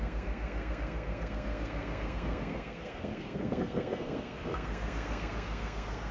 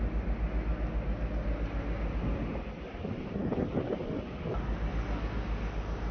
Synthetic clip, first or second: first